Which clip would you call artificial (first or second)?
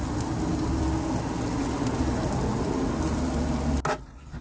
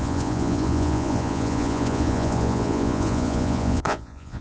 second